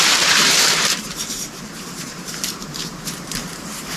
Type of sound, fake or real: fake